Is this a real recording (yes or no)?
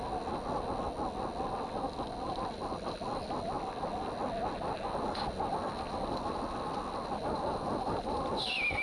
yes